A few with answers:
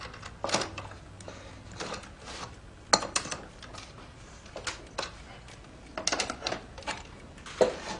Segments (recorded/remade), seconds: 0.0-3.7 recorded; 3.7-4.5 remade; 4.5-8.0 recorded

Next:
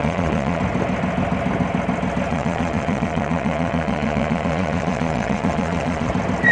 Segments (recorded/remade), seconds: 0.0-0.6 remade; 0.6-2.3 recorded; 2.3-6.1 remade; 6.1-6.5 recorded

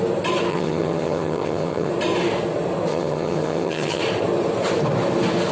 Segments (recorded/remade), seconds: 0.0-0.5 recorded; 0.5-1.9 remade; 1.9-2.9 recorded; 2.9-4.0 remade; 4.0-5.5 recorded

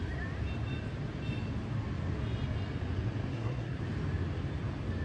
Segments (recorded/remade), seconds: 0.0-3.3 recorded; 3.3-3.8 remade; 3.8-5.0 recorded

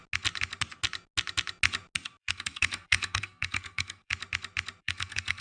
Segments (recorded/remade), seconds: 0.0-2.2 recorded; 2.2-4.1 remade; 4.1-4.8 recorded; 4.8-5.4 remade

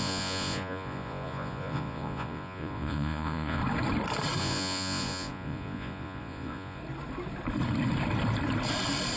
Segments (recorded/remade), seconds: 0.0-3.6 remade; 3.6-4.4 recorded; 4.4-6.8 remade; 6.8-9.2 recorded

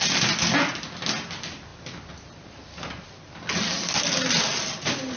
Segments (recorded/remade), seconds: 0.0-5.2 recorded